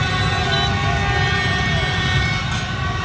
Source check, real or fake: real